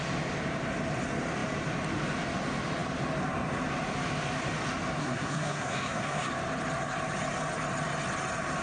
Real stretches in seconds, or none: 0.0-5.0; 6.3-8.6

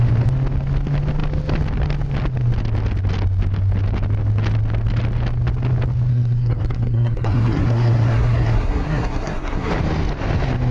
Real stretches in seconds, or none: 0.0-6.1; 9.7-10.7